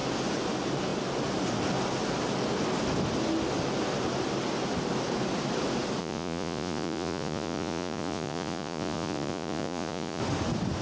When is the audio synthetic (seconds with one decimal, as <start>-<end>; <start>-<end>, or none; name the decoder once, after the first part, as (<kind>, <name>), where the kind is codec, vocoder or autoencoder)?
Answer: 6.0-10.2 (vocoder, Vocos)